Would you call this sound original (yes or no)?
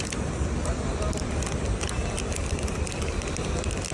yes